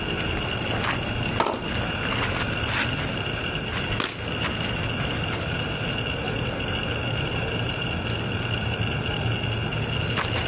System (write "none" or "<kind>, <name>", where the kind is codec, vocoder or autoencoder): none